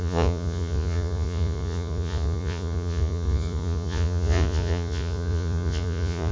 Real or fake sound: fake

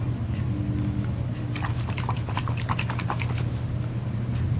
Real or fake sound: real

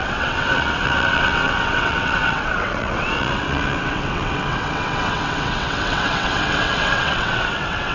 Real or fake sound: fake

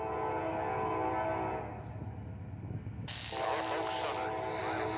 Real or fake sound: real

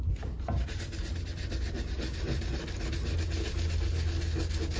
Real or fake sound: real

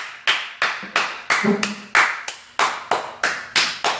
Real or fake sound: real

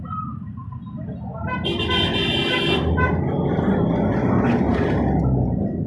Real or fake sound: real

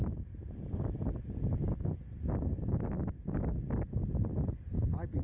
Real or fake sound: real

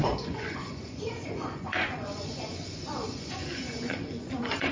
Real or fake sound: fake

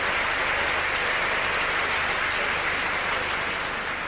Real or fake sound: real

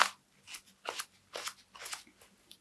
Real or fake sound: real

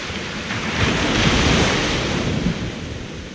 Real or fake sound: fake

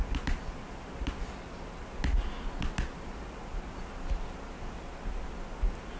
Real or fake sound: real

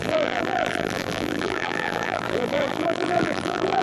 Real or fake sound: fake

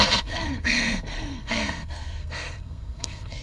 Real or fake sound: fake